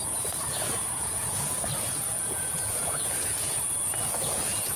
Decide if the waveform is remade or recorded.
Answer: remade